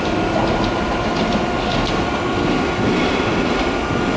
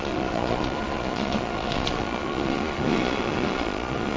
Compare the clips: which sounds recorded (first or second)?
first